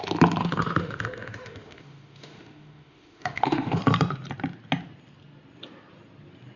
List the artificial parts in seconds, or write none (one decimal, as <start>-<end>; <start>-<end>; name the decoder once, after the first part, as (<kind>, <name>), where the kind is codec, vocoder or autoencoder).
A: 0.4-3.8 (autoencoder, DAC-VAE)